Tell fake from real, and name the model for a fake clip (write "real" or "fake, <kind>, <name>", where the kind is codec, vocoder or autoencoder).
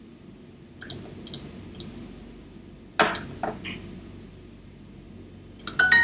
real